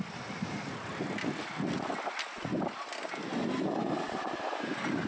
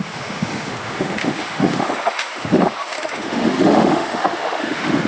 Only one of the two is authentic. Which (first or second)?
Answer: first